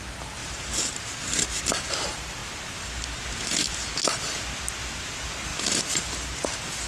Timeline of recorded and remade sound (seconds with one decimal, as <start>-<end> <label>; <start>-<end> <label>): 0.0-0.4 recorded; 0.4-1.6 remade; 1.6-5.5 recorded; 5.5-6.5 remade; 6.5-6.9 recorded